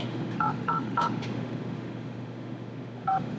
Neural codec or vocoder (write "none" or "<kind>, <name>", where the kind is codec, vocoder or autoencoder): autoencoder, DAC-VAE